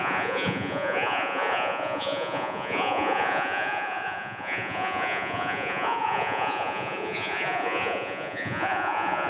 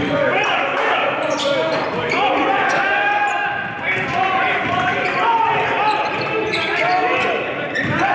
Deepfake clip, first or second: first